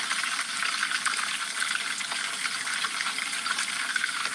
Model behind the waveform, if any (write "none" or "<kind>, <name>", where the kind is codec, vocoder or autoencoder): none